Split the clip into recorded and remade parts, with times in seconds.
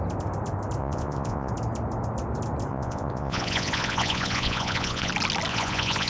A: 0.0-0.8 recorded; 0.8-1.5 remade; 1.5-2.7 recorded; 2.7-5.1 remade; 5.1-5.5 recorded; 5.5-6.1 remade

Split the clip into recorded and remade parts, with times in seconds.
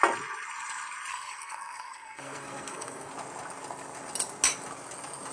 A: 0.0-1.1 recorded; 1.1-3.1 remade; 3.1-5.3 recorded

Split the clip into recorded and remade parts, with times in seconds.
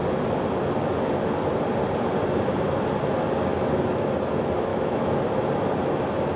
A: 0.0-4.7 recorded; 4.7-5.2 remade; 5.2-6.4 recorded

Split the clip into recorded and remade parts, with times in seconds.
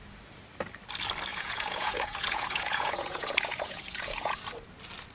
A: 0.0-1.3 recorded; 1.3-4.4 remade; 4.4-5.1 recorded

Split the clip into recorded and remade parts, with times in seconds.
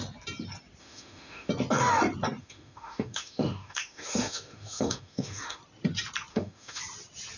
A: 0.0-0.8 recorded; 0.8-1.5 remade; 1.5-2.4 recorded; 2.4-5.6 remade; 5.6-6.3 recorded; 6.3-6.8 remade; 6.8-7.4 recorded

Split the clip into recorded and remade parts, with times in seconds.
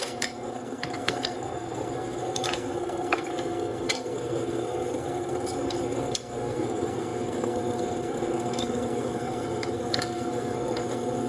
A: 0.0-11.3 remade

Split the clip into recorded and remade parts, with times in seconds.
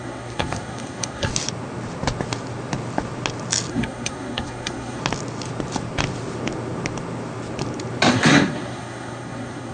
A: 0.0-1.3 remade; 1.3-3.7 recorded; 3.7-5.0 remade; 5.0-8.1 recorded; 8.1-9.7 remade